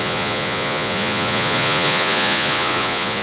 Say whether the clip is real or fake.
fake